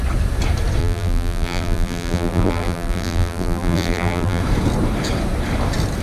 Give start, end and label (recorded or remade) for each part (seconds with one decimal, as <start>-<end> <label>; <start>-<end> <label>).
0.0-0.8 recorded; 0.8-4.4 remade; 4.4-6.0 recorded